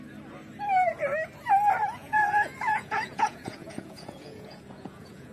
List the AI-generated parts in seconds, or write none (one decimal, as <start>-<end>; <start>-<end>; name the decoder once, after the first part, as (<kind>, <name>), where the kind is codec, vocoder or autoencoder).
2.0-5.3 (vocoder, Vocos)